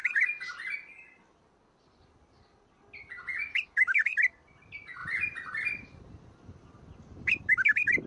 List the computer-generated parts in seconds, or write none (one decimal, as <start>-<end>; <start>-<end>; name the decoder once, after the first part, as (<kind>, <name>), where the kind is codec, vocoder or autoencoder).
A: 5.0-7.5 (vocoder, BigVGAN v2)